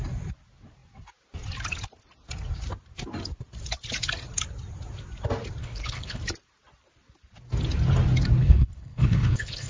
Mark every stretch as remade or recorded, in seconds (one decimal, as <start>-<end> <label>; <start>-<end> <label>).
0.0-5.6 recorded; 5.6-6.2 remade; 6.2-8.4 recorded; 8.4-9.7 remade